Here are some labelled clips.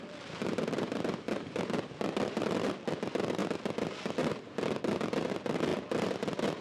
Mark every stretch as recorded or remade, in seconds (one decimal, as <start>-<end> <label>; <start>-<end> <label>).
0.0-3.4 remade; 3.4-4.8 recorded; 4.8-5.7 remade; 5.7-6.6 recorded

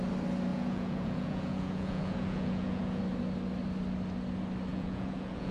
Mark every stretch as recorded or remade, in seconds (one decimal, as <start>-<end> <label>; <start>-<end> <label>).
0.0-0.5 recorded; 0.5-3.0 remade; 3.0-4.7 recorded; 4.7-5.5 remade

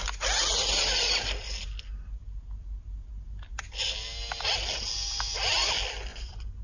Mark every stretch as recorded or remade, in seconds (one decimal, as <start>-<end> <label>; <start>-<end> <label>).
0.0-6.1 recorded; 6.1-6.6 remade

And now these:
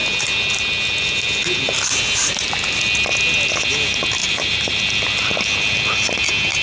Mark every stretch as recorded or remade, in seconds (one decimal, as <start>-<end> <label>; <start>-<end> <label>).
0.0-2.2 recorded; 2.2-2.8 remade; 2.8-4.2 recorded; 4.2-4.8 remade; 4.8-6.6 recorded

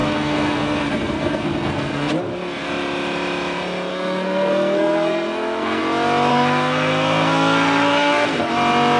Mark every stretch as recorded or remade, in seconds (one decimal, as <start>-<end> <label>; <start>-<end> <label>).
0.0-2.1 remade; 2.1-3.9 recorded; 3.9-5.8 remade; 5.8-6.3 recorded; 6.3-8.5 remade; 8.5-9.0 recorded